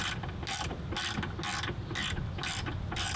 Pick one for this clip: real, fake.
real